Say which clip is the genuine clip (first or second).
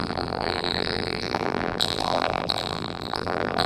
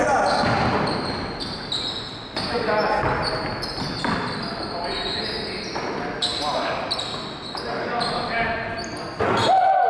second